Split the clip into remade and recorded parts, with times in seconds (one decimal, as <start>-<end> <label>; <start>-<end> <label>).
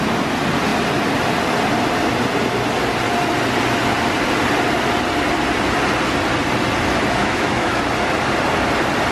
0.0-7.2 recorded; 7.2-7.8 remade; 7.8-9.1 recorded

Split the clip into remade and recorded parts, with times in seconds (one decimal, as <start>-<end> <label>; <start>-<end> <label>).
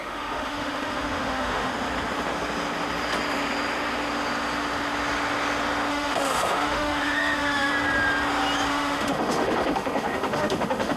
0.0-1.7 remade; 1.7-5.9 recorded; 5.9-7.7 remade; 7.7-8.7 recorded; 8.7-11.0 remade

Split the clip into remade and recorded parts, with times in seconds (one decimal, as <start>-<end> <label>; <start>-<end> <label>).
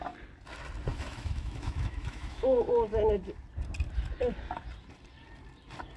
0.0-0.9 recorded; 0.9-2.7 remade; 2.7-6.0 recorded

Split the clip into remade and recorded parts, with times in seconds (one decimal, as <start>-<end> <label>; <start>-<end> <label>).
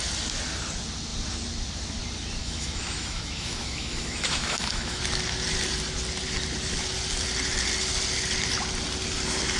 0.0-2.4 recorded; 2.4-5.0 remade; 5.0-9.6 recorded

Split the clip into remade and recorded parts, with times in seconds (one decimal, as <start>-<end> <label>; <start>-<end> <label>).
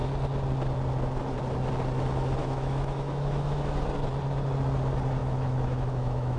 0.0-2.4 recorded; 2.4-3.8 remade; 3.8-5.2 recorded; 5.2-6.4 remade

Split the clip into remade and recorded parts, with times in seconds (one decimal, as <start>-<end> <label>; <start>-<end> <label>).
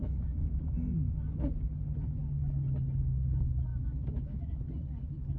0.0-1.5 remade; 1.5-3.7 recorded; 3.7-4.6 remade; 4.6-5.4 recorded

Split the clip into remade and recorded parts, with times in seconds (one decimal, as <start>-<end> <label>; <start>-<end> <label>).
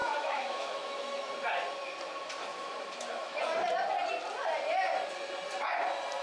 0.0-1.3 remade; 1.3-2.5 recorded; 2.5-3.4 remade; 3.4-6.2 recorded